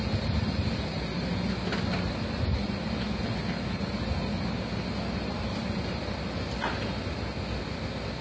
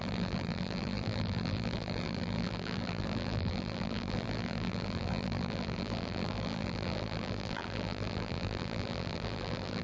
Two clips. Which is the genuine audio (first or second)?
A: first